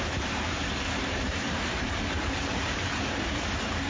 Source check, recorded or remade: remade